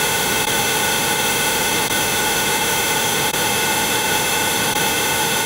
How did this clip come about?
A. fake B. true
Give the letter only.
A